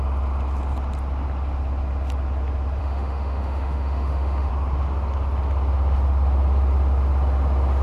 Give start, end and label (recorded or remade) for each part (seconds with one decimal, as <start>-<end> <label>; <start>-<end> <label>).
0.0-2.8 recorded; 2.8-4.5 remade; 4.5-7.8 recorded